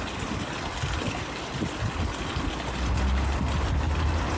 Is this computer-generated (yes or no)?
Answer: no